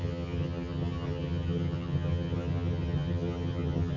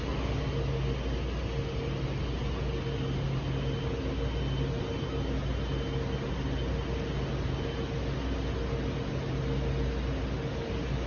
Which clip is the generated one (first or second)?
first